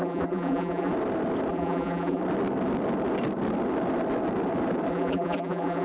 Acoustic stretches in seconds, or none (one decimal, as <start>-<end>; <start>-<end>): 0.9-1.5; 2.2-4.9

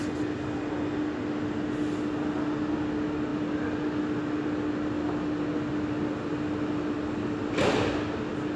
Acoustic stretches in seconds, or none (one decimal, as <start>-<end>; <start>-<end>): 0.0-8.6

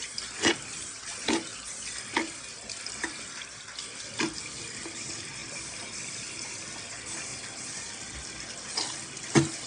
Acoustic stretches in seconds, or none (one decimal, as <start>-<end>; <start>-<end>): 0.0-9.7

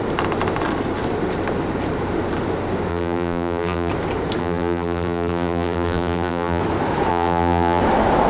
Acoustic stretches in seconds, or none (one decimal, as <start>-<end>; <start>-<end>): 0.0-2.9; 3.9-4.4; 6.6-7.1; 7.8-8.3

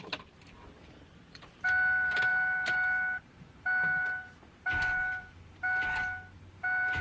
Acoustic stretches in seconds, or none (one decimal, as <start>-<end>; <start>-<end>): none

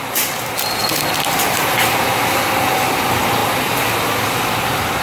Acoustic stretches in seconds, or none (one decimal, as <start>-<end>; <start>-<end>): 0.0-0.8; 1.9-3.4; 4.6-5.0